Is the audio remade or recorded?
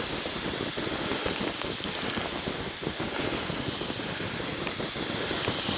recorded